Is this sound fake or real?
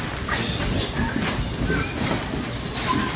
real